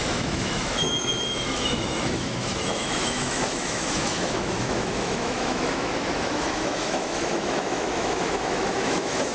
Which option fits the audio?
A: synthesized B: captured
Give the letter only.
A